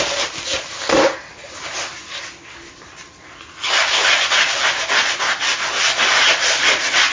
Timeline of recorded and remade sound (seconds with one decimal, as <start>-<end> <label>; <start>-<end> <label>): 0.0-2.9 recorded; 2.9-5.8 remade; 5.8-7.1 recorded